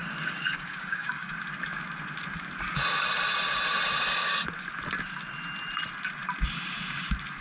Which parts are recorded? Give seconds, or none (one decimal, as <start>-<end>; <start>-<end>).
1.3-7.4